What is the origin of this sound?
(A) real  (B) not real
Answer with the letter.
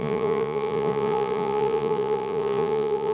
B